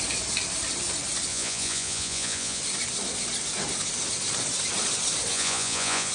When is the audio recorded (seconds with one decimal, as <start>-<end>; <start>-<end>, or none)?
0.0-1.3; 2.6-5.3

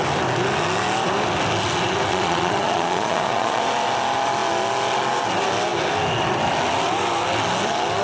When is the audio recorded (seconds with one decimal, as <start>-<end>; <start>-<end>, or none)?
0.0-2.1; 3.6-8.0